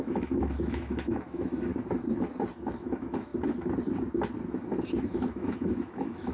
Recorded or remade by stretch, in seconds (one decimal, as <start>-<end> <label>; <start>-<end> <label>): 0.0-1.7 remade; 1.7-2.8 recorded; 2.8-3.3 remade; 3.3-5.0 recorded; 5.0-6.3 remade